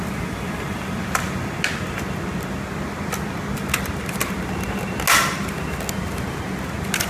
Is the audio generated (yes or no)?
no